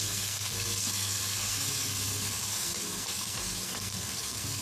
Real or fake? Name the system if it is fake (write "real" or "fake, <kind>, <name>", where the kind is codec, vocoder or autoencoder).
fake, codec, SNAC